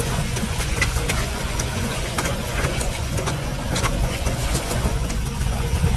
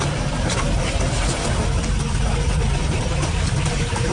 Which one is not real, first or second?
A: first